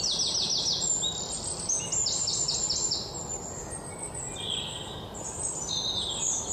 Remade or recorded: recorded